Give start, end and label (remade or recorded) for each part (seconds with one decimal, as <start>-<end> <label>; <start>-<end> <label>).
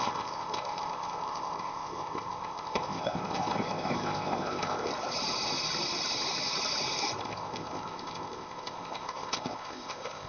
0.0-4.9 remade; 4.9-7.2 recorded; 7.2-10.3 remade